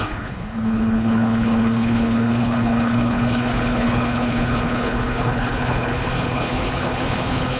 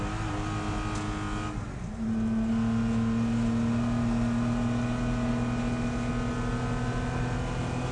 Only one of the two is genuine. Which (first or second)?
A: second